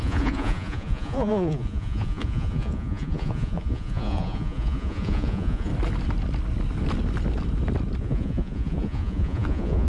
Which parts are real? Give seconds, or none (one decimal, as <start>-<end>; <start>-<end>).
5.7-8.0

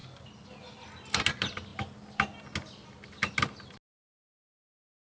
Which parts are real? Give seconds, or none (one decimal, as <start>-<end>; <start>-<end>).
0.0-5.1

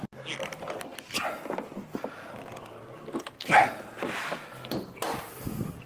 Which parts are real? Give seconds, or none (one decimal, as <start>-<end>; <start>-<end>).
0.0-5.9

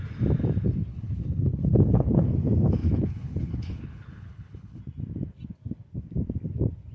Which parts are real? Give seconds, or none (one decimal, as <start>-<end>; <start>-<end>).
0.0-0.9; 2.3-2.8; 4.8-6.9

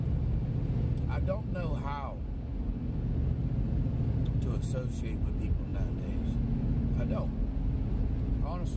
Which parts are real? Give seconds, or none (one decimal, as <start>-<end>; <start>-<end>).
0.0-8.8